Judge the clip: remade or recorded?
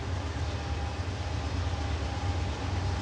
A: recorded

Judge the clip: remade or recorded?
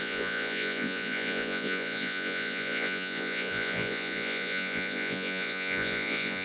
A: remade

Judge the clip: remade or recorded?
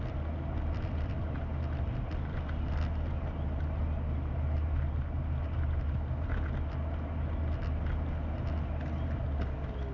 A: recorded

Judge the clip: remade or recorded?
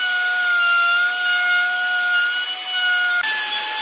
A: recorded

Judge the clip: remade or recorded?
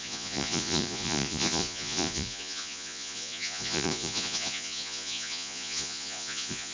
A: remade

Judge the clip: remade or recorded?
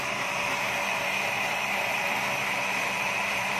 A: remade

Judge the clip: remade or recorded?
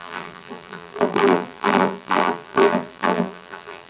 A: remade